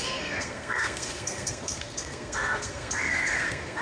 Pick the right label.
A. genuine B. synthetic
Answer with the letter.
B